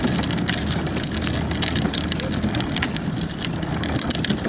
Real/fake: real